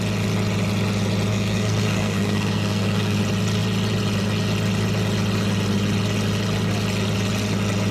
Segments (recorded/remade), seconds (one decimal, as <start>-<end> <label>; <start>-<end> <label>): 0.0-1.3 recorded; 1.3-3.2 remade; 3.2-7.9 recorded